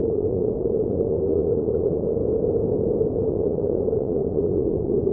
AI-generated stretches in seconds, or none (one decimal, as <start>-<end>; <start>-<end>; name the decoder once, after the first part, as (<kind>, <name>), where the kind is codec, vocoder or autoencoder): 0.0-2.2 (vocoder, Vocos); 3.2-5.1